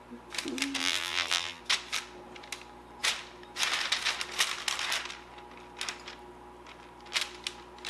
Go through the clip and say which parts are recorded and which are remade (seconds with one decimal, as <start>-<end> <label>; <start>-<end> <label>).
0.0-0.8 recorded; 0.8-1.6 remade; 1.6-7.9 recorded